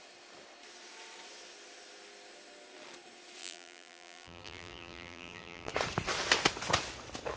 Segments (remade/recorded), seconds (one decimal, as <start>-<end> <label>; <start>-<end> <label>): 0.0-3.4 recorded; 3.4-5.7 remade; 5.7-7.4 recorded